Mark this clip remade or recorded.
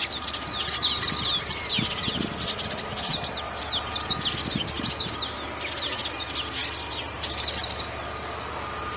recorded